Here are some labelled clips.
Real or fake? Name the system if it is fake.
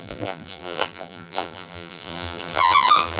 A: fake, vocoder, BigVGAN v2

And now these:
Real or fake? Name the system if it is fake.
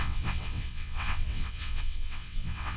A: fake, vocoder, WaveNeXt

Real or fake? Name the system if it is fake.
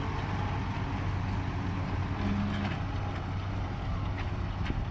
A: real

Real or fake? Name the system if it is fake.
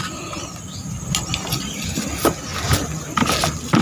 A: real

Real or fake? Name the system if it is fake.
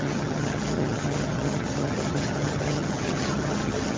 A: fake, vocoder, HiFi-GAN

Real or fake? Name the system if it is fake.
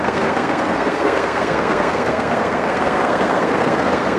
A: fake, codec, SNAC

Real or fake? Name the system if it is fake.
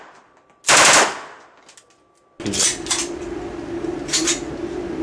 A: real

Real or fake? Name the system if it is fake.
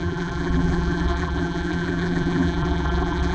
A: fake, vocoder, BigVGAN v2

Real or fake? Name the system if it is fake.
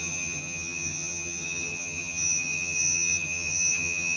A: fake, vocoder, HiFi-GAN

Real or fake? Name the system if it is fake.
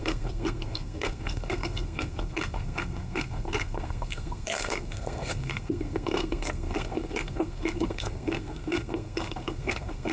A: fake, codec, SNAC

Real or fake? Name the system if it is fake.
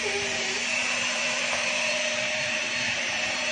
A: fake, vocoder, BigVGAN v2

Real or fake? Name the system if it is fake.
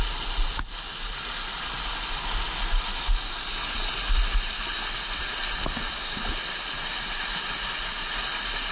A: real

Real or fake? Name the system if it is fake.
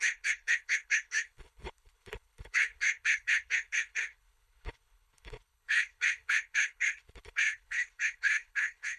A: fake, codec, HILCodec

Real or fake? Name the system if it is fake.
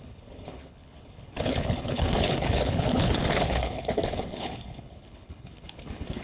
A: fake, codec, HILCodec